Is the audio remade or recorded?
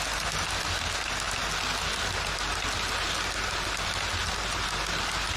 recorded